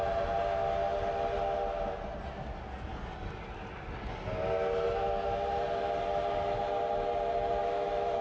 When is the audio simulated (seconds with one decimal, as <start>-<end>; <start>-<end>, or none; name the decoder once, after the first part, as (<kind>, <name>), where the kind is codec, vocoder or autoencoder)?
7.6-8.2 (autoencoder, DAC-VAE)